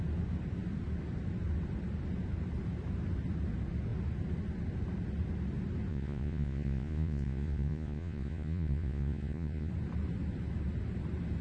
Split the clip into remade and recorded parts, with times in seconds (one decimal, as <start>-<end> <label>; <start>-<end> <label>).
0.0-5.9 recorded; 5.9-9.7 remade; 9.7-11.4 recorded